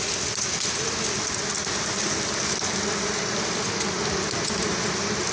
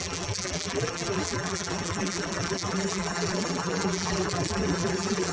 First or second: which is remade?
second